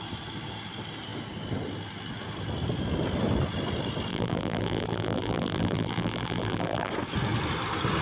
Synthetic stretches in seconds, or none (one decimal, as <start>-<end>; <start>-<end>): 4.1-6.9